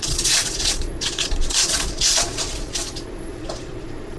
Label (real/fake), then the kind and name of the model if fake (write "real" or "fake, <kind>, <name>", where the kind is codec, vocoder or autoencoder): fake, vocoder, Vocos